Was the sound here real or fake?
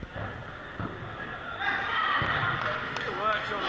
real